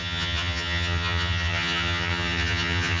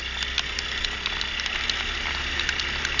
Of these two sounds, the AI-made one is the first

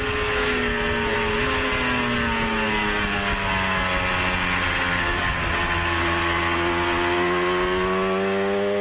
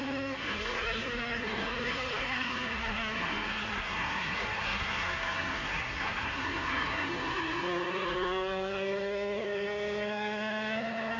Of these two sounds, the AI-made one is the second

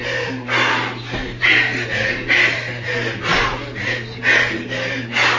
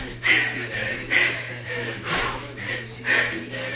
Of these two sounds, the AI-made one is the second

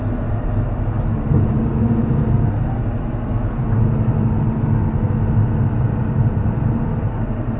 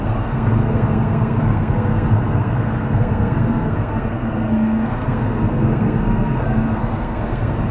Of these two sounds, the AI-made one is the second